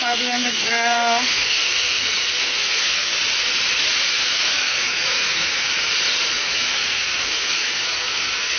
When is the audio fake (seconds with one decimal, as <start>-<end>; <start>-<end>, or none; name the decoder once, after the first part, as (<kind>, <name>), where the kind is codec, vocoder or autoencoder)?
0.0-3.1 (codec, SNAC); 4.1-5.7; 6.3-8.6